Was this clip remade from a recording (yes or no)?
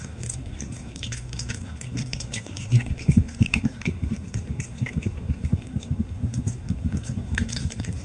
yes